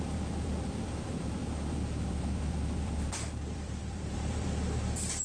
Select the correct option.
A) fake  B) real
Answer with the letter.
A